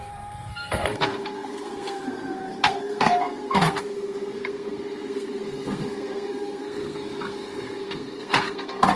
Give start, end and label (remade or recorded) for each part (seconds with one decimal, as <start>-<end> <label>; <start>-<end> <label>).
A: 0.0-9.0 remade